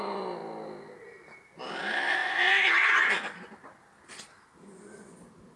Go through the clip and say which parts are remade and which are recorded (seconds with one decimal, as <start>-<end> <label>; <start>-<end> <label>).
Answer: 0.0-2.2 recorded; 2.2-3.1 remade; 3.1-5.6 recorded